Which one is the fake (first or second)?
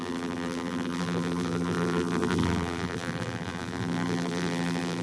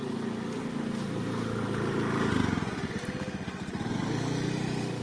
first